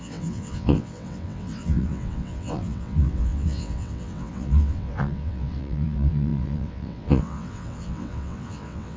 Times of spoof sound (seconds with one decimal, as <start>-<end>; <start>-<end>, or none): 0.0-9.0